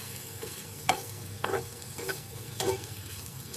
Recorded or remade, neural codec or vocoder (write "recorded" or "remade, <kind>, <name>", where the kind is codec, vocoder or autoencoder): remade, codec, SNAC